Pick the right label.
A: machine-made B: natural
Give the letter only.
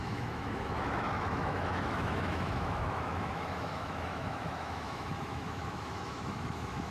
A